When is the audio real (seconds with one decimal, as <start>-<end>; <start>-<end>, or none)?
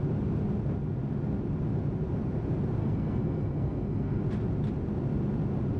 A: 0.0-2.8; 4.2-5.8